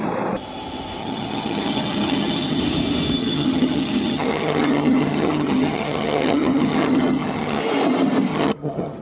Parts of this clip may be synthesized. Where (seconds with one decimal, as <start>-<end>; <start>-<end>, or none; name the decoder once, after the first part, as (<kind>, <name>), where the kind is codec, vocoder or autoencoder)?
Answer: 1.0-2.6 (vocoder, HiFi-GAN); 3.2-7.6; 8.3-9.0